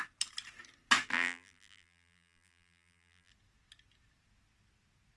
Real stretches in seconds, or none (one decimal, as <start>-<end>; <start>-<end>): 0.0-1.1; 3.3-5.2